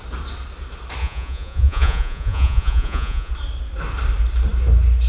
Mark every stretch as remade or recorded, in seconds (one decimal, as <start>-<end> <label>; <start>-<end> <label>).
0.0-1.0 recorded; 1.0-3.3 remade; 3.3-5.1 recorded